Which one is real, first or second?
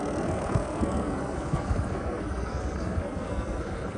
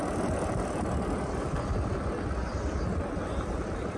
second